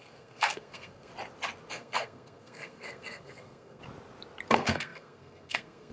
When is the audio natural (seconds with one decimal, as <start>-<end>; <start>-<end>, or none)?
1.1-1.7; 3.8-4.5